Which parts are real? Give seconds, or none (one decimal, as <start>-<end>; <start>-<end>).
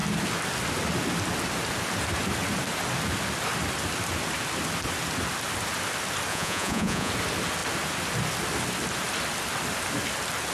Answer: 0.0-6.3; 7.1-10.5